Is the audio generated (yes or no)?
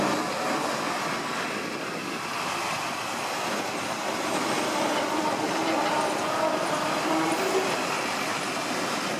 no